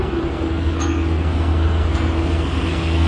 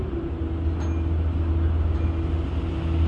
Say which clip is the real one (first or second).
second